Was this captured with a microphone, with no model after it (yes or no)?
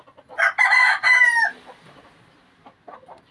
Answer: yes